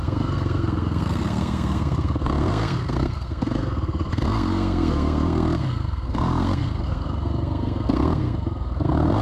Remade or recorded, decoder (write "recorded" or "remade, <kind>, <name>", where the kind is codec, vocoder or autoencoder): remade, codec, SNAC